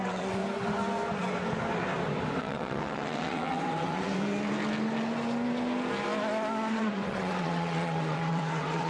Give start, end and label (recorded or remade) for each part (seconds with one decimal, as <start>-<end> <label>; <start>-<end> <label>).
0.0-0.4 remade; 0.4-2.4 recorded; 2.4-4.1 remade; 4.1-6.7 recorded; 6.7-8.9 remade